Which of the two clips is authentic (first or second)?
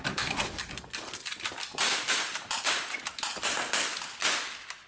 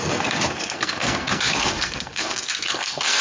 first